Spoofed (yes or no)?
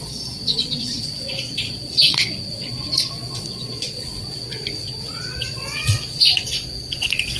yes